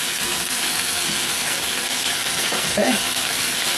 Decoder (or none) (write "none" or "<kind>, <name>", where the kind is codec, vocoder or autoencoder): codec, SNAC